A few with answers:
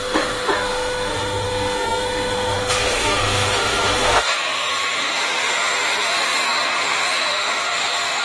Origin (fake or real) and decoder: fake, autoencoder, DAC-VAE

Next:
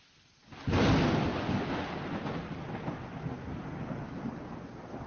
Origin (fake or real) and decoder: real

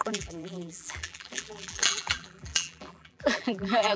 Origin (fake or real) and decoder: fake, vocoder, BigVGAN v2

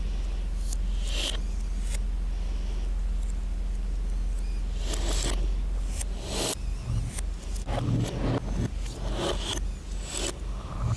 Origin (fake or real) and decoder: real